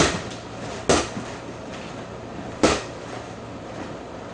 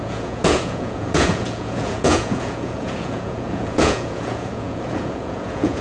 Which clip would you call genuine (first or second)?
first